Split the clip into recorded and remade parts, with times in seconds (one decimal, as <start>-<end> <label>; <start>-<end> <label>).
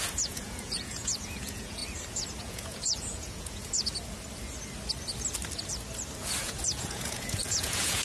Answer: 0.0-1.8 remade; 1.8-2.4 recorded; 2.4-3.9 remade; 3.9-6.4 recorded; 6.4-8.0 remade